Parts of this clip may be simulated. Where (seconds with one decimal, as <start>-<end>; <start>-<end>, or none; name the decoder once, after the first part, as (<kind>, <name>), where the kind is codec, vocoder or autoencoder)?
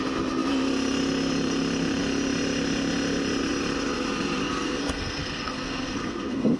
4.4-6.6 (codec, SNAC)